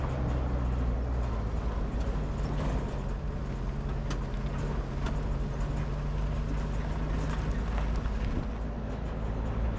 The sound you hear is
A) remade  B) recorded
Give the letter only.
B